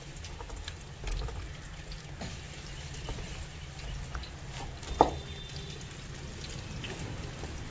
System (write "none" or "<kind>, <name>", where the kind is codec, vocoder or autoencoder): none